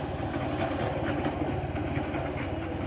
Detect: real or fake real